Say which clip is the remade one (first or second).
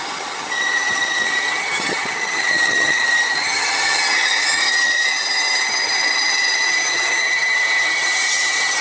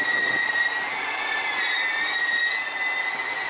first